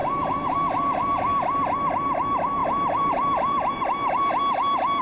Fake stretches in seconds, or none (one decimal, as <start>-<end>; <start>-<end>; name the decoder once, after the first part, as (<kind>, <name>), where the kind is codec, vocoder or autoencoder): 0.0-0.5 (vocoder, BigVGAN v2); 2.6-4.3